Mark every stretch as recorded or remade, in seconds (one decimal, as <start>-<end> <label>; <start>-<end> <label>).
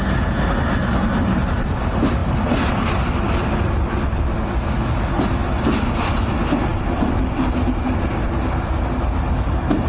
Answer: 0.0-2.2 recorded; 2.2-4.2 remade; 4.2-5.4 recorded; 5.4-6.1 remade; 6.1-6.7 recorded; 6.7-7.4 remade; 7.4-9.9 recorded